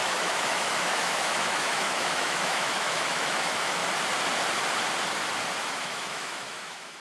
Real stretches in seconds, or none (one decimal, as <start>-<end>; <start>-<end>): 3.8-5.6